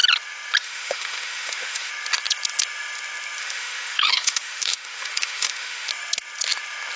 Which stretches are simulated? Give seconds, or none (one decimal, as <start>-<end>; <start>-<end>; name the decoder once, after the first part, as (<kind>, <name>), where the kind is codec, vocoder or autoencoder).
0.6-1.9 (autoencoder, DAC-VAE); 3.4-5.9